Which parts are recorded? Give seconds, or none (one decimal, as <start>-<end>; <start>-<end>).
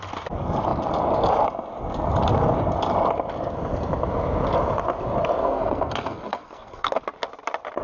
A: 0.0-5.4; 7.0-7.8